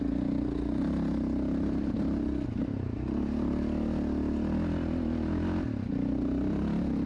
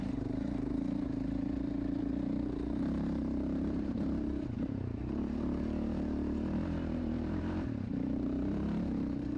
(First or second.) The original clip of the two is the first